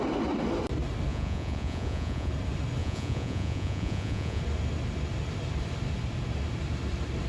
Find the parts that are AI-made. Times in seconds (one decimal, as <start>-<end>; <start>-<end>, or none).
1.1-2.3; 2.8-4.4